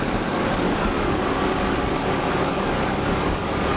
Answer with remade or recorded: remade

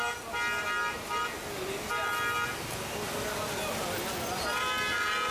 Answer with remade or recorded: recorded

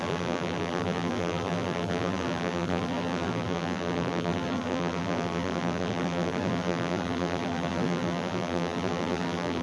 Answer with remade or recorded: remade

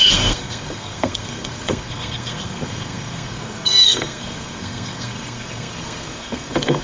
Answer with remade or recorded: remade